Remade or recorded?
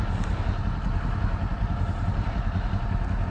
recorded